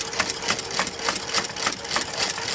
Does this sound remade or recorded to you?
recorded